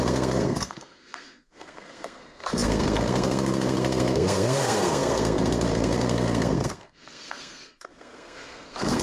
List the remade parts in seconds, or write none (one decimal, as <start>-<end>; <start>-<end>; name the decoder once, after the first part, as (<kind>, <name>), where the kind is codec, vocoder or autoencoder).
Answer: 0.0-9.0 (codec, SNAC)